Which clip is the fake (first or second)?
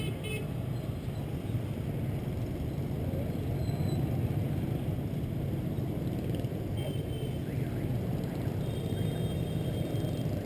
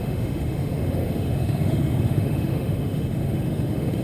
second